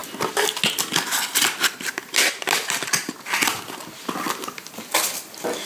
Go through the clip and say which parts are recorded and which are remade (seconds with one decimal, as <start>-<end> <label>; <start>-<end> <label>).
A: 0.0-5.7 recorded

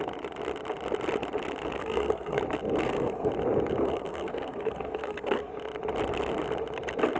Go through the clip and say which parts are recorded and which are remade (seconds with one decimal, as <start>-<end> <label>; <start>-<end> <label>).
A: 0.0-1.8 recorded; 1.8-2.4 remade; 2.4-2.8 recorded; 2.8-3.3 remade; 3.3-3.8 recorded; 3.8-5.5 remade; 5.5-7.2 recorded

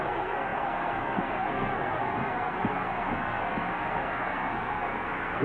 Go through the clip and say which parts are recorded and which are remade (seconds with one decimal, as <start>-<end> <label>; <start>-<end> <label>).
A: 0.0-5.4 remade

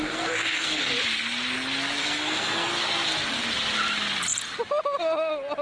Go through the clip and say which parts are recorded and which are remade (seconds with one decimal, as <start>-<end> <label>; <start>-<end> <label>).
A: 0.0-0.9 remade; 0.9-2.0 recorded; 2.0-2.7 remade; 2.7-5.6 recorded

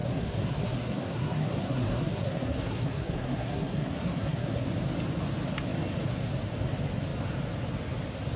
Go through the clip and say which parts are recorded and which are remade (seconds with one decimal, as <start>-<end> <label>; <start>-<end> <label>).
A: 0.0-4.6 remade; 4.6-8.4 recorded

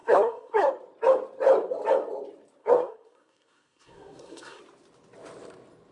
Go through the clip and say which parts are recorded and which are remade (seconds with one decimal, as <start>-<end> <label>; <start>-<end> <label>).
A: 0.0-0.7 remade; 0.7-2.6 recorded; 2.6-4.6 remade; 4.6-5.9 recorded

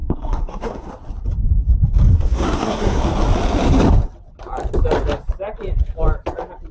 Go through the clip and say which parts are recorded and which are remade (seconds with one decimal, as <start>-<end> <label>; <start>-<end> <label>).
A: 0.0-0.9 remade; 0.9-2.1 recorded; 2.1-3.0 remade; 3.0-6.7 recorded

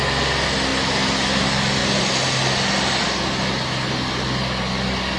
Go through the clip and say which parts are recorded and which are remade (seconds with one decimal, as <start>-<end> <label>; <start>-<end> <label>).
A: 0.0-5.2 recorded